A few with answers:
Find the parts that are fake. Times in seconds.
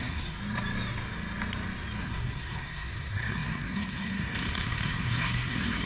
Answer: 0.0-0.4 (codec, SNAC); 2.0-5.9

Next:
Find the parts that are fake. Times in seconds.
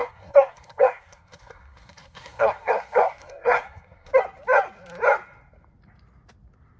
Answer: 0.0-4.1 (codec, SNAC)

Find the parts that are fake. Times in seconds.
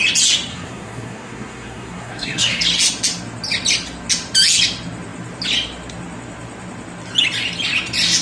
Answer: 0.5-2.6 (codec, SNAC)